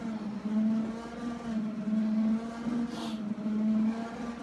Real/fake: real